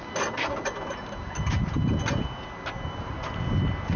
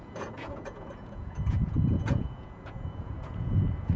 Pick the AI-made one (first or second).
second